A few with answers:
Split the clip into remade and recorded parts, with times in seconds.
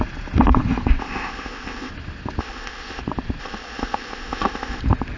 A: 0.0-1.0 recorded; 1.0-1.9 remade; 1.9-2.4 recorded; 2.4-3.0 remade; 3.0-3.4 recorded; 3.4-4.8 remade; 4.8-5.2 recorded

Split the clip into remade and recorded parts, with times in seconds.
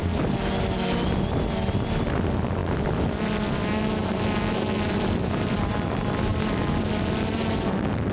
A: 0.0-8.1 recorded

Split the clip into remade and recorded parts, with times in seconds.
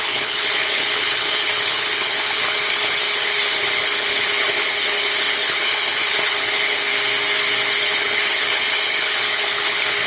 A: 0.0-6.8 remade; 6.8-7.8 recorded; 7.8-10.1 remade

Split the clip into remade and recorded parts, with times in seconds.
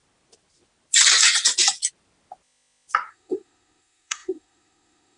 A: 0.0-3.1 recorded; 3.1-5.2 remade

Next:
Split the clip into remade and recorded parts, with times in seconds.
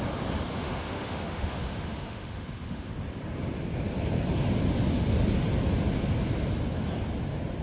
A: 0.0-0.5 recorded; 0.5-2.9 remade; 2.9-7.6 recorded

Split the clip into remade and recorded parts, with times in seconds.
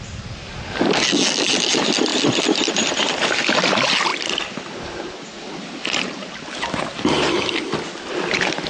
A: 0.0-8.7 recorded